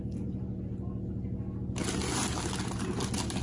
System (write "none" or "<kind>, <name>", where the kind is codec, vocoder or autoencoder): none